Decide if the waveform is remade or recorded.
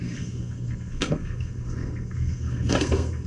remade